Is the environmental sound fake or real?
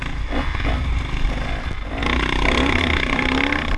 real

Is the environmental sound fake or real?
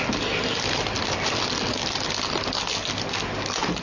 real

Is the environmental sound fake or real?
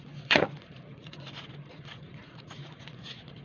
fake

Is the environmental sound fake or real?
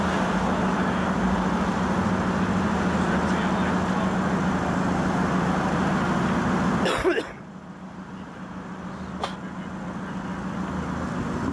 real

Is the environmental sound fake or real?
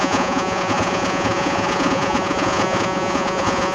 fake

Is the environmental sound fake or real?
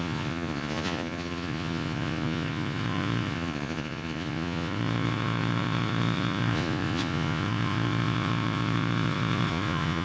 fake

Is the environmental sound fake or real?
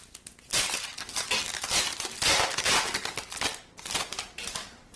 real